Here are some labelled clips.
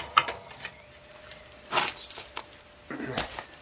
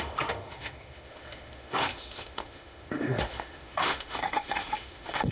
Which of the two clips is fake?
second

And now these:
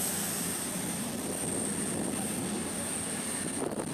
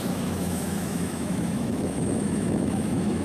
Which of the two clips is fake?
second